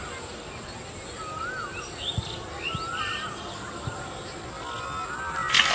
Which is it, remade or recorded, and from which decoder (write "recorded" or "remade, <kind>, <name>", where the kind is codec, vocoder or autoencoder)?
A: recorded